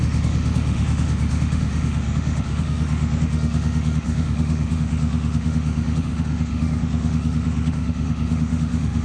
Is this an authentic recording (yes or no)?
no